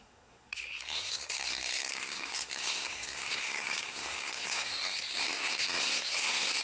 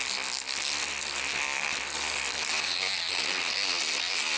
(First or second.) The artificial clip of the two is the first